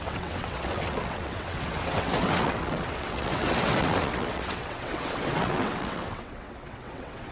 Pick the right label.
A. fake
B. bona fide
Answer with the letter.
A